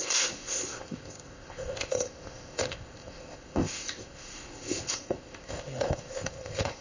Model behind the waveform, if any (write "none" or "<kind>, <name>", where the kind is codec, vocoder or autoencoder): codec, ZipCodec